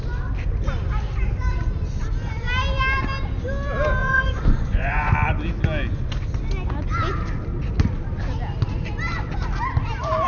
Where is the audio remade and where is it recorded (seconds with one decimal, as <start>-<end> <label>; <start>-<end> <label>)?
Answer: 0.0-4.0 recorded; 4.0-5.1 remade; 5.1-10.3 recorded